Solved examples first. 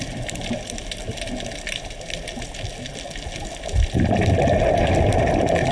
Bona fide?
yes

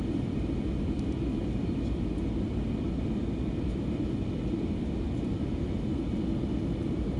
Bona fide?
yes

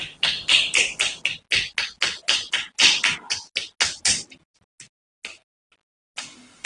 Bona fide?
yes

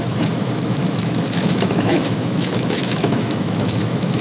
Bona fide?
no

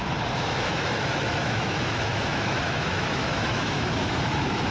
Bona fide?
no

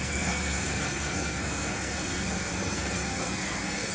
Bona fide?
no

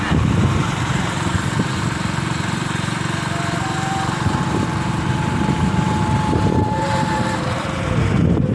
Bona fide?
no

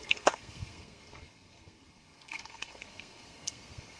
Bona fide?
no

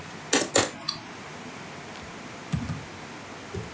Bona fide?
yes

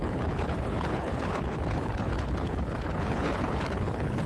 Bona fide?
no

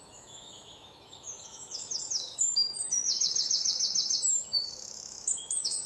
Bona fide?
no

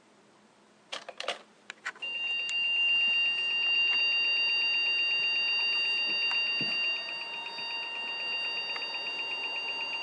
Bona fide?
yes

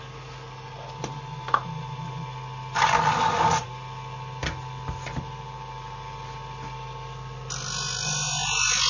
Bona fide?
yes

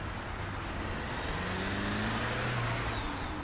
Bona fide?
yes